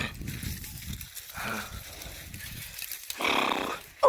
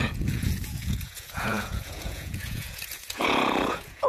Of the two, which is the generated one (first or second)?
second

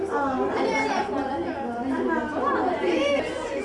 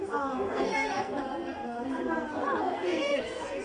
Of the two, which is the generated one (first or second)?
second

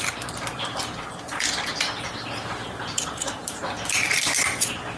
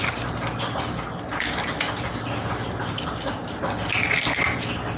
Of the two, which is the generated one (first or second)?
first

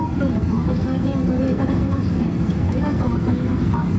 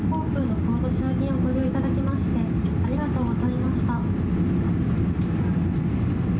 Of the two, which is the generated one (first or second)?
first